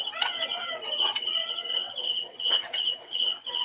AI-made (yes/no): yes